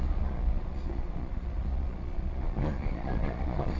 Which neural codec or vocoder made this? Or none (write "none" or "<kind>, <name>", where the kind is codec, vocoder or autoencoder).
vocoder, Vocos